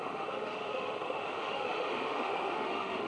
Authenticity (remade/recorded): remade